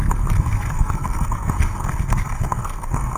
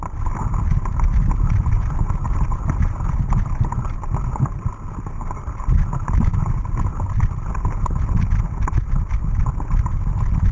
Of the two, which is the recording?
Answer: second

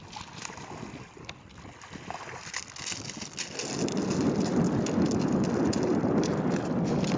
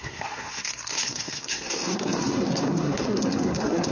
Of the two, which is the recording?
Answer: first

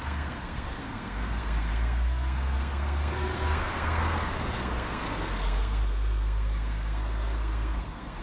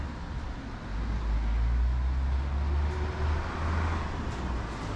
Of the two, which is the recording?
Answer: second